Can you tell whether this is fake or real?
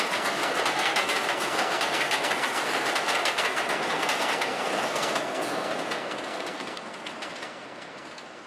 fake